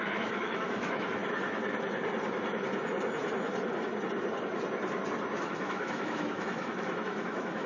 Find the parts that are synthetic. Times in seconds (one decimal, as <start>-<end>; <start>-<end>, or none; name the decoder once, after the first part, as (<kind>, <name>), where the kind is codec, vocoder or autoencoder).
0.0-1.2 (autoencoder, DAC-VAE); 5.4-7.7